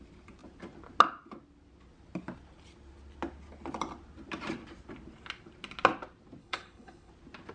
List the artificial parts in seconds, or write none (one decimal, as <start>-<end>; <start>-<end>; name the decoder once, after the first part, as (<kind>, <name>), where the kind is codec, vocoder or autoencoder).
6.4-7.1 (codec, HILCodec)